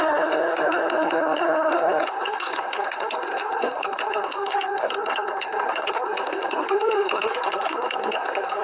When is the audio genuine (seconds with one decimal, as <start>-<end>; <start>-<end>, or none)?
none